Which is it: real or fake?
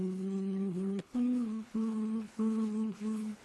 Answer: fake